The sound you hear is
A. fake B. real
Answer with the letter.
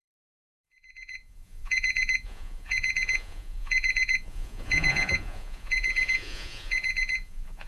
A